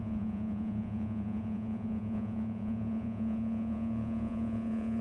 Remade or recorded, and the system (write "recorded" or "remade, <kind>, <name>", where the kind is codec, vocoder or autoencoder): remade, vocoder, Vocos